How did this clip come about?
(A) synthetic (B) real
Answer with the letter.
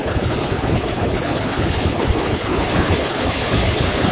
A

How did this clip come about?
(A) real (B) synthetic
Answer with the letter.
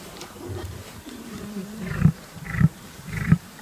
B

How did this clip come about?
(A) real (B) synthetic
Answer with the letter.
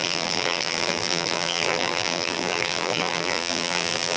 B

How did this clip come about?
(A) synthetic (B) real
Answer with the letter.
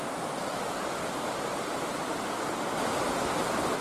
B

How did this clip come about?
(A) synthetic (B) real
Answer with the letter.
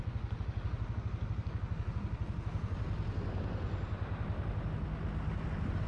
B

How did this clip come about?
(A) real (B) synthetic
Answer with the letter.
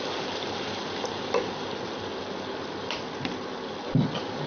A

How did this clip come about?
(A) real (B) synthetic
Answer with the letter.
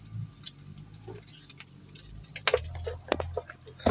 A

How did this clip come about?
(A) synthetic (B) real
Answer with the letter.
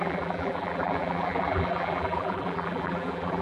A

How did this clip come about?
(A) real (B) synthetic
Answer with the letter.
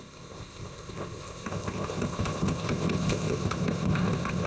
B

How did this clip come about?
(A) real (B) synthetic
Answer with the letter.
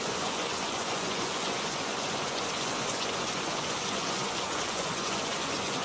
B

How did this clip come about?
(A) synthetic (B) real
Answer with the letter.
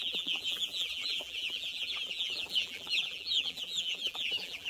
A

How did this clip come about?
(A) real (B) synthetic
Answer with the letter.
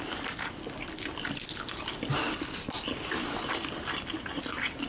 A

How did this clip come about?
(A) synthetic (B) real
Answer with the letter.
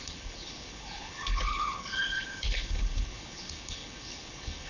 A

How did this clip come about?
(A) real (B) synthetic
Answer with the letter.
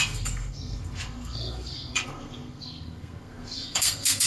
B